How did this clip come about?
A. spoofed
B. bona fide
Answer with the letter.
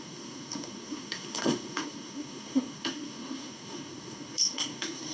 A